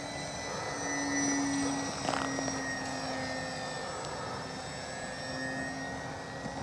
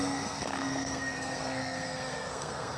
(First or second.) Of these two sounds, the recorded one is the first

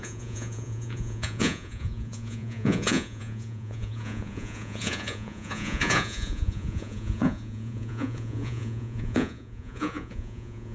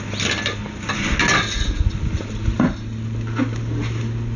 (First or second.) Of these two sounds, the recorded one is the second